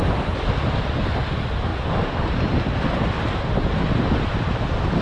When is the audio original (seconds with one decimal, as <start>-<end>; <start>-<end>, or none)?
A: 0.0-5.0